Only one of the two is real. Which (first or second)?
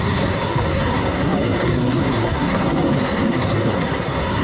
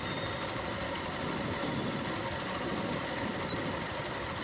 second